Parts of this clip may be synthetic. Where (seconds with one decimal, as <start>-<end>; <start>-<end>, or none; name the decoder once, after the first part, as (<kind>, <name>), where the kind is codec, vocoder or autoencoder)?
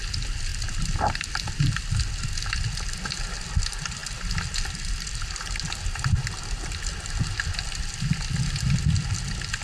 none